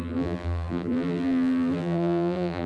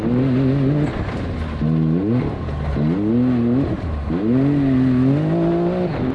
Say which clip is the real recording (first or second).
second